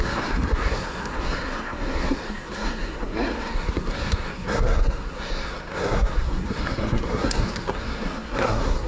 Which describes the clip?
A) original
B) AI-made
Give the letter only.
B